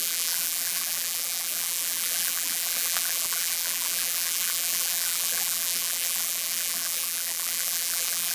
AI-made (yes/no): yes